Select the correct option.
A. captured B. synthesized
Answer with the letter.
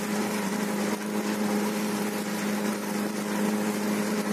B